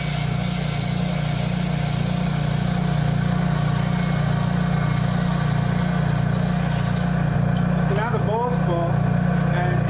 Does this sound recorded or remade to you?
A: recorded